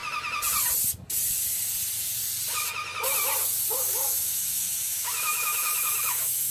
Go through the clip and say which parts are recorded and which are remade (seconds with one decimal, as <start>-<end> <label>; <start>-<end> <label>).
0.0-3.9 recorded; 3.9-6.5 remade